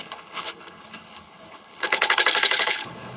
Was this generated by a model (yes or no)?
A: yes